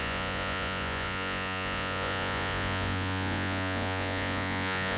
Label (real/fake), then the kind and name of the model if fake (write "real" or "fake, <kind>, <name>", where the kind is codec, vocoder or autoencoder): fake, vocoder, Vocos